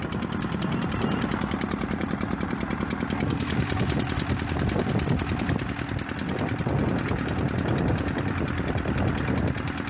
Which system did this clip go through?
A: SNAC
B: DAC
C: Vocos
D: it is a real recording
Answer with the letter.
D